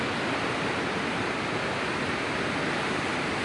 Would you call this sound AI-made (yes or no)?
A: no